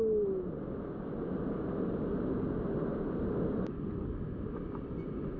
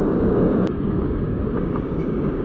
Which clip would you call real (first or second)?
first